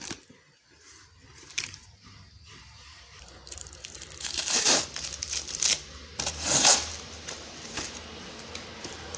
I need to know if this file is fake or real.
fake